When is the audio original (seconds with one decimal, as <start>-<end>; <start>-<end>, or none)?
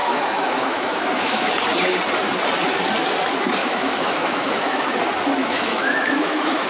1.5-3.6; 4.9-5.4